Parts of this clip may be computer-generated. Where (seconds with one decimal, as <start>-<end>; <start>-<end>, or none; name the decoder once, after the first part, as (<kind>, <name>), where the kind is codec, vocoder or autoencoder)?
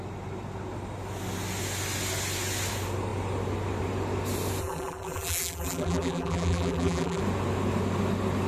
4.6-7.2 (vocoder, BigVGAN v2)